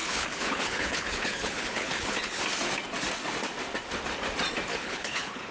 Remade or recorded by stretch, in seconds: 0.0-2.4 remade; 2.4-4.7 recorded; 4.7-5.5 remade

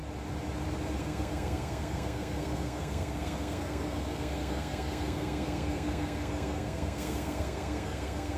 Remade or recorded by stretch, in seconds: 0.0-1.0 recorded; 1.0-8.4 remade

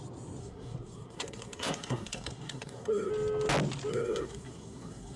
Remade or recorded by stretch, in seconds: 0.0-0.4 recorded; 0.4-3.1 remade; 3.1-3.9 recorded; 3.9-5.2 remade

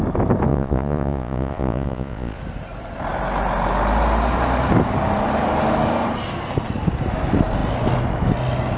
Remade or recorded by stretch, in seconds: 0.0-0.5 recorded; 0.5-2.4 remade; 2.4-8.8 recorded